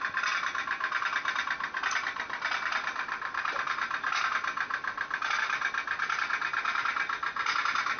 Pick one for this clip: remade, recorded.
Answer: recorded